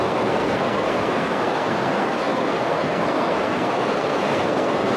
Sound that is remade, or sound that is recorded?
remade